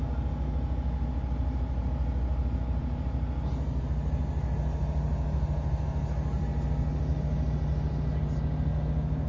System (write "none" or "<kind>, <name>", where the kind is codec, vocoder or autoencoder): none